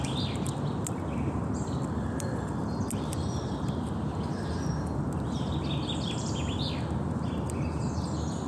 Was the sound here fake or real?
real